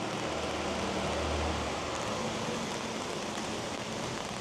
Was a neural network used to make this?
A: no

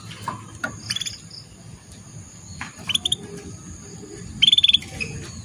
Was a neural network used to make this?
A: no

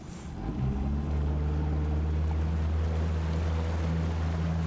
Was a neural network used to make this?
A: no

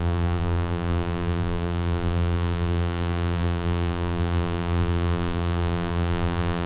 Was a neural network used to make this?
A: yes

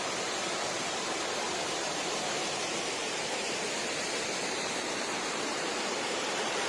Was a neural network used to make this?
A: yes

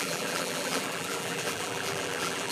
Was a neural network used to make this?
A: yes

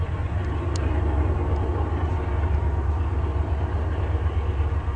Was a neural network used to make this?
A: no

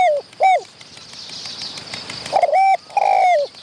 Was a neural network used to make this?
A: no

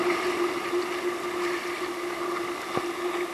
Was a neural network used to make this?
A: no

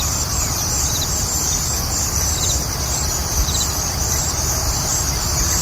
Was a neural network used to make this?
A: yes